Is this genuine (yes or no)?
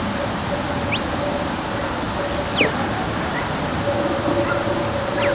yes